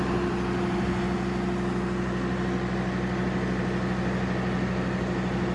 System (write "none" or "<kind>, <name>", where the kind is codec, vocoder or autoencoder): none